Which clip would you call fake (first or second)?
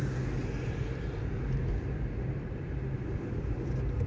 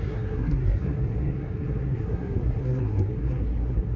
second